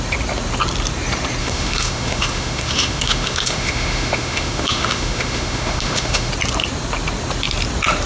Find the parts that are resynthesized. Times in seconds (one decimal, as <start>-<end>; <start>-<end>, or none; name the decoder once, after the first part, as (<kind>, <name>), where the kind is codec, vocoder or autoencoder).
1.4-6.3 (autoencoder, DAC-VAE)